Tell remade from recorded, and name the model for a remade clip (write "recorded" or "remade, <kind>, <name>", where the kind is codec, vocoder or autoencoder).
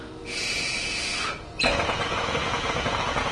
remade, vocoder, Vocos